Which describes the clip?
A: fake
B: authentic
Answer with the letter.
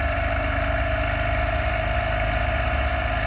B